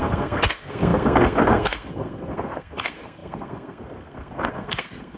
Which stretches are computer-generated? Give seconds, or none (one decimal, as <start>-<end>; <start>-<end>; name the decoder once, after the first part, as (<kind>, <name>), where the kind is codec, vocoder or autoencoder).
0.0-5.2 (codec, SNAC)